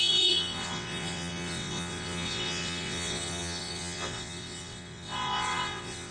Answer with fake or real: fake